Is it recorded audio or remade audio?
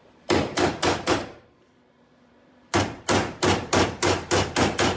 remade